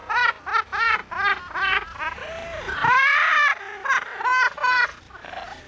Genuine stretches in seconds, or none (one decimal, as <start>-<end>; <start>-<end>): 0.0-5.7